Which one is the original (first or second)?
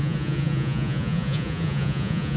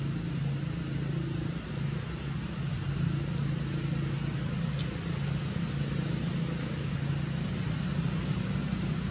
second